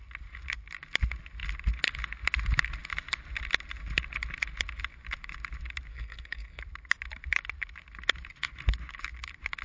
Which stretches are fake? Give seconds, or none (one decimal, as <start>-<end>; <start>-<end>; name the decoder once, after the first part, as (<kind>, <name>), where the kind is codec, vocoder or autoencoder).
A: 5.9-6.6 (codec, SNAC)